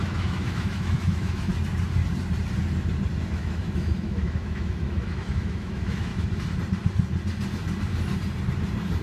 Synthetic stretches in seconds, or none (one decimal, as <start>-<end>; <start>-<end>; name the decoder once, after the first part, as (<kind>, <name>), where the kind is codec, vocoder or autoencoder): 0.0-1.5 (autoencoder, DAC-VAE); 3.3-6.1

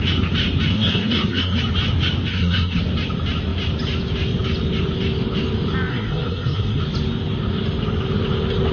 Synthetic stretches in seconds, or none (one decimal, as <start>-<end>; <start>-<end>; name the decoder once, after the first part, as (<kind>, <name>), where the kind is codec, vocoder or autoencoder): 0.7-1.6 (codec, SNAC); 2.3-2.8; 5.9-6.8

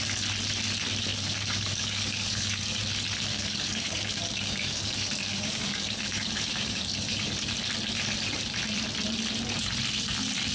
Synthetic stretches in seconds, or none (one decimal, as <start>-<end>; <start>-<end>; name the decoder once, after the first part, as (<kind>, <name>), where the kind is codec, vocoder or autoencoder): 1.1-2.8 (codec, DAC); 3.3-7.5